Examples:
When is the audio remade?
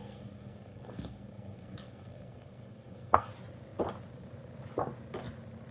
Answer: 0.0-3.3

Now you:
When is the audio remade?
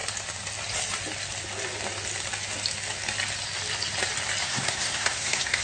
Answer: 4.4-5.6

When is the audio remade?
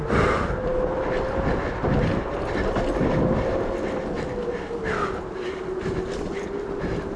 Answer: none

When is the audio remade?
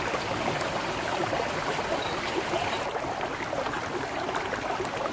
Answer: none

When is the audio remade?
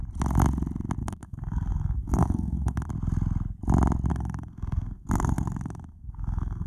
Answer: 1.0-2.9; 4.1-6.7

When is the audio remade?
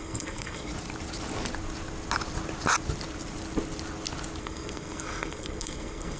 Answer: 0.0-0.7; 4.4-6.2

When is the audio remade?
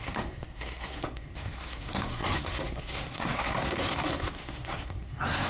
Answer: 0.0-5.5